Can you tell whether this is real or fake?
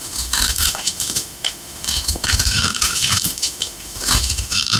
fake